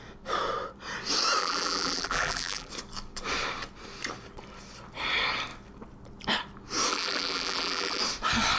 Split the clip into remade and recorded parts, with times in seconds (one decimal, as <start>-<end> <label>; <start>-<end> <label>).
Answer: 0.0-1.4 recorded; 1.4-2.7 remade; 2.7-6.9 recorded; 6.9-8.0 remade; 8.0-8.6 recorded